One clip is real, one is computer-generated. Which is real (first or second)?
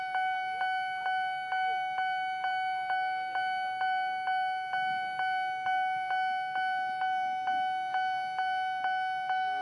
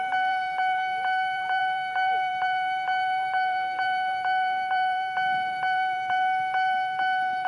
first